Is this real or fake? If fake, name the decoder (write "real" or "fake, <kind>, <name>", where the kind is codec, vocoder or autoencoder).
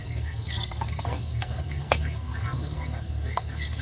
fake, codec, SNAC